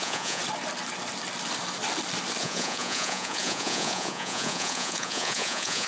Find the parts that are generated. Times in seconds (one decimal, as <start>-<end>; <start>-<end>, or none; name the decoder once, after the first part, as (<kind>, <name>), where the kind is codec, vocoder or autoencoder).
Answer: 0.0-0.4 (vocoder, Vocos); 2.4-5.9